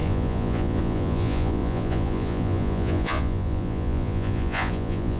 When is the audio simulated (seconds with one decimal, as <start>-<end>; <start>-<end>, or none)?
0.0-5.2

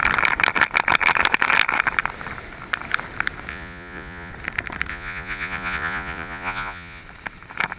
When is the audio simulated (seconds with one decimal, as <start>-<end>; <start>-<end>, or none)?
3.5-4.3; 4.9-7.0

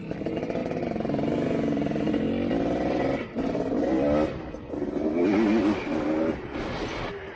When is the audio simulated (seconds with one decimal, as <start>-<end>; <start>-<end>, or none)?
none

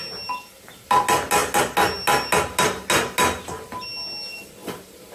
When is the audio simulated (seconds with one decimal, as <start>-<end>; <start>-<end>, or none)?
none